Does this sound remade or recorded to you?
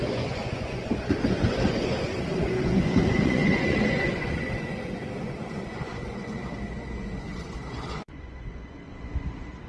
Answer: remade